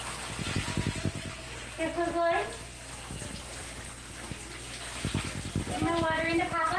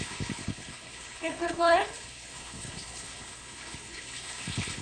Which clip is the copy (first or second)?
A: second